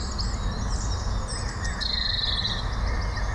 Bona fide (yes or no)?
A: yes